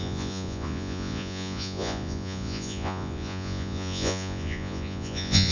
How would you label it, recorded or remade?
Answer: remade